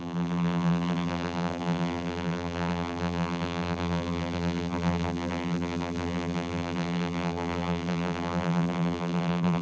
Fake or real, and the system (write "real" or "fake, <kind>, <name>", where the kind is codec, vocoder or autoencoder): fake, vocoder, BigVGAN v2